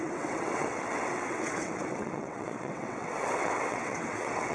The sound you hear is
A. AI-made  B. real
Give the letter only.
A